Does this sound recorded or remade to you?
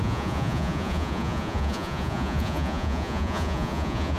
remade